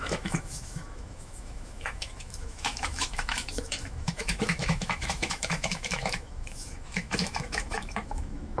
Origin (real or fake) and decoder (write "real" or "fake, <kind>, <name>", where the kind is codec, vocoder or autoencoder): fake, autoencoder, DAC-VAE